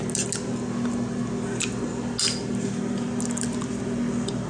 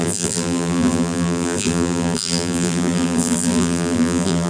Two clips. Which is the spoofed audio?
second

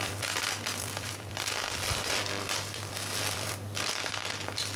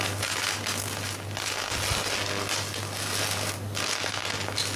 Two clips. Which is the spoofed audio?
first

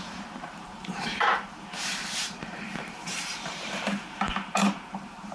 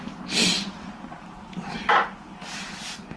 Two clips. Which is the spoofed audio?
first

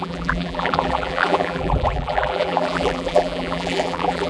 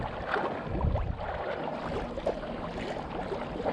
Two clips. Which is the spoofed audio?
first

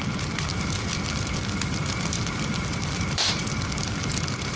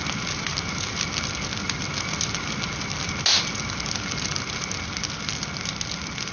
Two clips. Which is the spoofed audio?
first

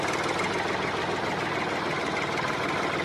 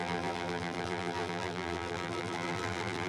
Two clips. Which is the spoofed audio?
second